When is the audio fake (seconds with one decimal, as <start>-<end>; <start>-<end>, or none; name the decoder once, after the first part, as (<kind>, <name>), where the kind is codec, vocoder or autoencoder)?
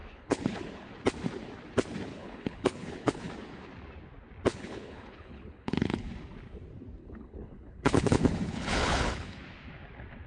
0.0-0.9 (codec, HILCodec); 2.1-3.3; 4.5-6.1; 7.0-9.4